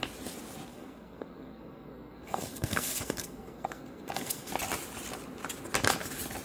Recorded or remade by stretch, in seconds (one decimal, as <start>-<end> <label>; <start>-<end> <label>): 0.0-0.7 recorded; 0.7-4.5 remade; 4.5-6.4 recorded